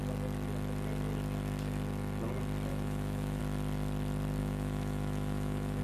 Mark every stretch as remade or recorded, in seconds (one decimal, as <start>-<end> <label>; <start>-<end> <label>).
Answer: 0.0-2.7 recorded; 2.7-3.4 remade; 3.4-4.4 recorded; 4.4-5.8 remade